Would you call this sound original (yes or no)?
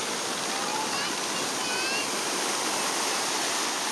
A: yes